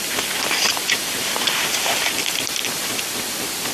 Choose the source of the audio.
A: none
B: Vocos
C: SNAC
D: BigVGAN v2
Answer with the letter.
D